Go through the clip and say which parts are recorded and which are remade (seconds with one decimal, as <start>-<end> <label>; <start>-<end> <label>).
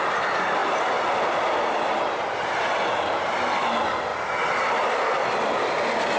0.0-6.2 recorded